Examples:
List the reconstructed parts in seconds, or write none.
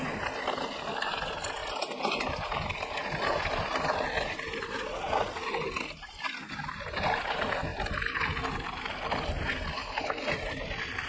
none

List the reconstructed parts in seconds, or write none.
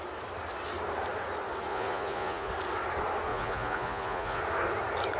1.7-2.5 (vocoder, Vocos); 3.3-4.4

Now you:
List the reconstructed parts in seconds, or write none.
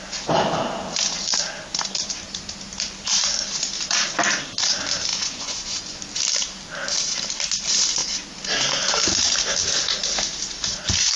5.1-6.0 (vocoder, Vocos)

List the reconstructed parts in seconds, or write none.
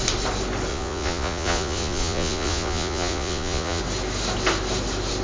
0.7-3.8 (vocoder, Vocos)